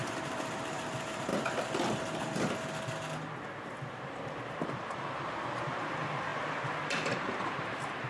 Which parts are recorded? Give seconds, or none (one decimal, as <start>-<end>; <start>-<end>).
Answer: 1.3-4.0